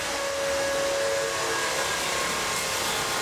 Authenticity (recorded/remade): recorded